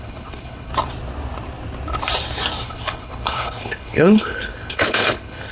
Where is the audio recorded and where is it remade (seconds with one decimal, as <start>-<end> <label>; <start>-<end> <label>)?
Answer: 0.0-0.7 remade; 0.7-2.6 recorded; 2.6-5.5 remade